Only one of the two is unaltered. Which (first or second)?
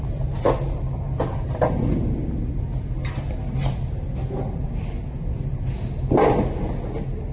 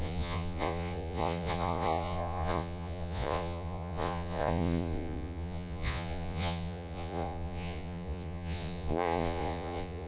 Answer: first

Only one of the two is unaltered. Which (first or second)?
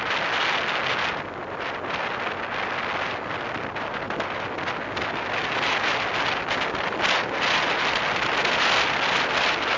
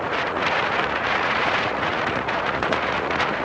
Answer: first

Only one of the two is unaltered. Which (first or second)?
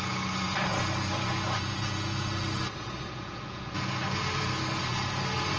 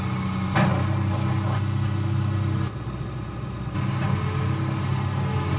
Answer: second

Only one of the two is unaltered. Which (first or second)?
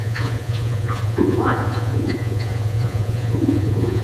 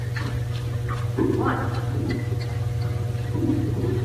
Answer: second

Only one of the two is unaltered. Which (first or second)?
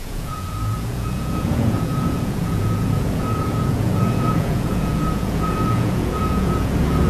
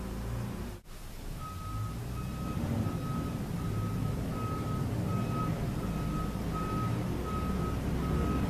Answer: second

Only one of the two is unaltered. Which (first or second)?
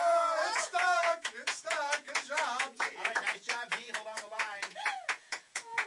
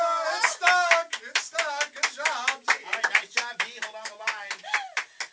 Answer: second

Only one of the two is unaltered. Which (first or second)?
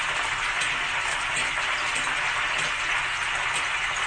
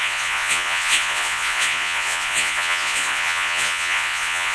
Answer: first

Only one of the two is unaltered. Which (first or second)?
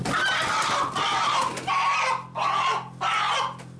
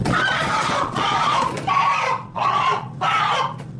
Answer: first